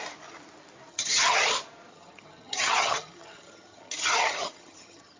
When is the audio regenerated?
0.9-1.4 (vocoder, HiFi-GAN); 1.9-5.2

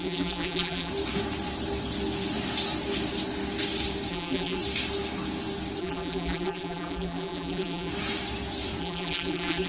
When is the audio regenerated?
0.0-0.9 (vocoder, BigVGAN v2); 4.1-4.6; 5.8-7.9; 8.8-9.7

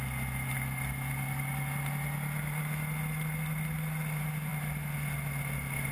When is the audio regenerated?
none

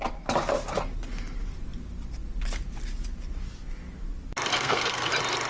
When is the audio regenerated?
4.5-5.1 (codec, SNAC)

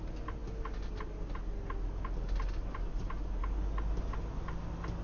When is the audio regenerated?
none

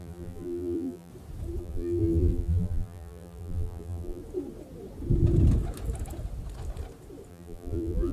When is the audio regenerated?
0.0-1.1 (vocoder, BigVGAN v2); 1.6-4.2; 7.3-8.1

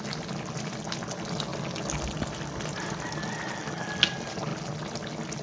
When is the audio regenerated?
none

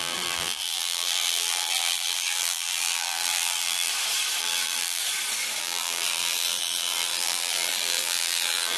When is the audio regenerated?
0.0-3.9 (vocoder, BigVGAN v2); 4.4-5.0; 5.6-8.8